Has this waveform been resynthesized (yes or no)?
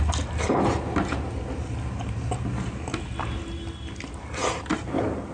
no